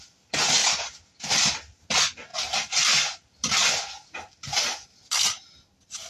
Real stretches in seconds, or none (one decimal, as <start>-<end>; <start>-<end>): 0.0-0.6; 1.3-6.1